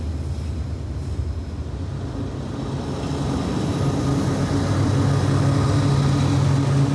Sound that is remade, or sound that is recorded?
recorded